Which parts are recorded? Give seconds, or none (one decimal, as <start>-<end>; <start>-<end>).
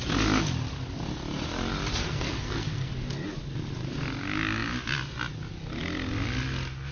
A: 0.0-2.0; 2.9-6.9